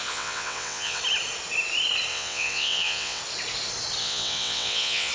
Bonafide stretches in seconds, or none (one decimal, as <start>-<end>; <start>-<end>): 1.0-2.1; 3.2-4.0